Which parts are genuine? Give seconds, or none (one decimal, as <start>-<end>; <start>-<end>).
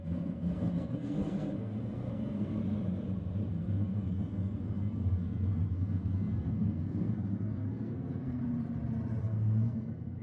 2.6-3.5; 8.4-9.2